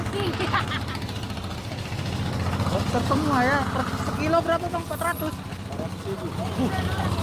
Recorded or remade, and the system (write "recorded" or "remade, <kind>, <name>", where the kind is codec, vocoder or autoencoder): recorded